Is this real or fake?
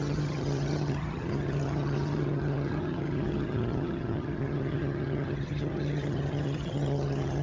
fake